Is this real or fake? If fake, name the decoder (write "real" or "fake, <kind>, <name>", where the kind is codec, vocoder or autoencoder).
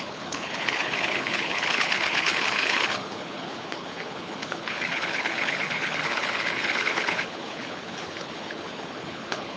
fake, codec, HILCodec